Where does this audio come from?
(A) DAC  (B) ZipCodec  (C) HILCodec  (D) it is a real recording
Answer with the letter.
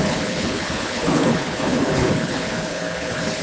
C